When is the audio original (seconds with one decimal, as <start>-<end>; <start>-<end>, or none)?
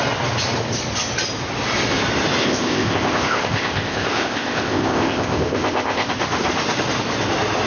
0.0-2.4; 6.1-7.7